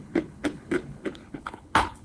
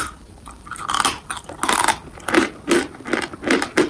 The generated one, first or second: first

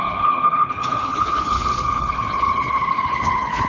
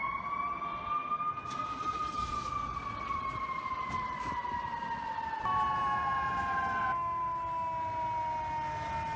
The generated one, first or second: first